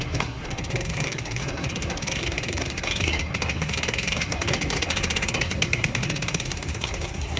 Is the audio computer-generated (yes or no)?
yes